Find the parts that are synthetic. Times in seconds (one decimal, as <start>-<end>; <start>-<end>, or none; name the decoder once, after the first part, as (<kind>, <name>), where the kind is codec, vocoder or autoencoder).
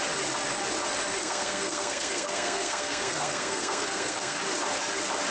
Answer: 1.2-4.4 (codec, SNAC)